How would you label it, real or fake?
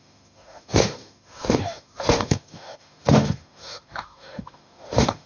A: fake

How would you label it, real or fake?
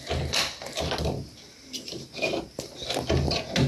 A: real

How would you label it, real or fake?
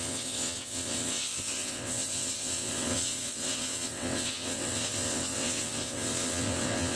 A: fake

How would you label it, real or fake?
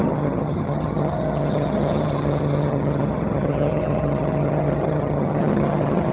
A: fake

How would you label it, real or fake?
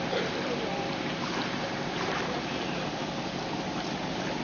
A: fake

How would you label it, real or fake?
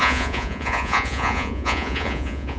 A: fake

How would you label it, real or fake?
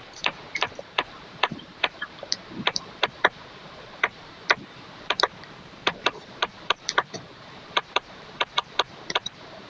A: fake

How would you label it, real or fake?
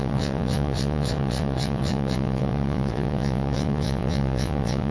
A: fake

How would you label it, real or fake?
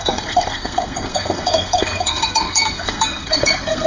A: fake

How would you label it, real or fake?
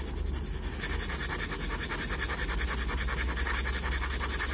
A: real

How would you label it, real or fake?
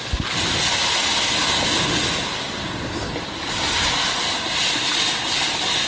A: real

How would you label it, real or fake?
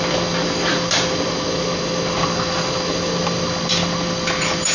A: real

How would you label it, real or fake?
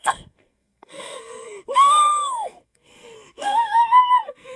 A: fake